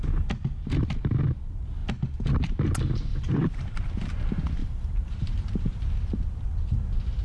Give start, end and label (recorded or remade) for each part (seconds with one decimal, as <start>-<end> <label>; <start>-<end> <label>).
0.0-3.1 recorded; 3.1-3.8 remade; 3.8-4.6 recorded; 4.6-5.8 remade; 5.8-7.2 recorded